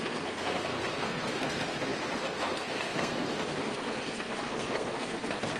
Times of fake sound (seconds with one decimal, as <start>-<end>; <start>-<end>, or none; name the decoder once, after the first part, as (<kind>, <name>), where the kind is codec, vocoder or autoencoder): 0.0-5.6 (codec, SNAC)